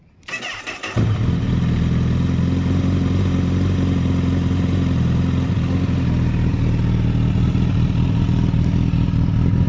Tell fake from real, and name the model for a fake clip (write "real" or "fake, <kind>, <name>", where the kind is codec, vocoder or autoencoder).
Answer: real